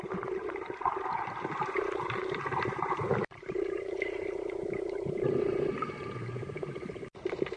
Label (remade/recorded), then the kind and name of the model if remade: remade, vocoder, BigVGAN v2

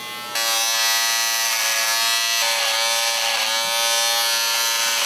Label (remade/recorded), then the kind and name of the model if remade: recorded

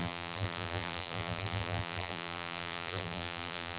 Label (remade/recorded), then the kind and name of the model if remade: remade, vocoder, BigVGAN v2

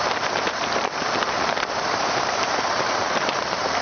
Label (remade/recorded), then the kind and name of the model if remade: remade, vocoder, BigVGAN v2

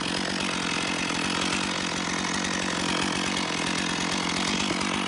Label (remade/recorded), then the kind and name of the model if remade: recorded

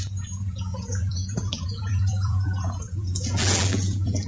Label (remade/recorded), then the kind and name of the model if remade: remade, vocoder, BigVGAN v2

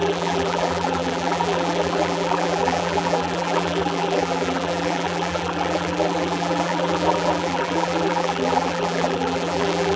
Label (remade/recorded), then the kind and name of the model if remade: remade, vocoder, BigVGAN v2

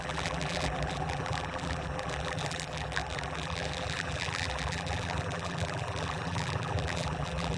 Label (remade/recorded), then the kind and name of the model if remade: remade, vocoder, BigVGAN v2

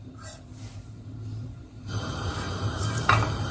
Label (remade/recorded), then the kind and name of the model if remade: remade, vocoder, BigVGAN v2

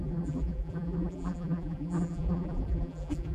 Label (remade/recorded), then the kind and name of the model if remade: remade, vocoder, BigVGAN v2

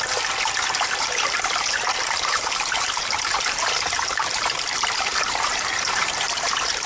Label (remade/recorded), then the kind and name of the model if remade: remade, vocoder, BigVGAN v2